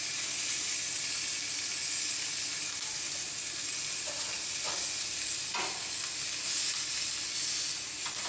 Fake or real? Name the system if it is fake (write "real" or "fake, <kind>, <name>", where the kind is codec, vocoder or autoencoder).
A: real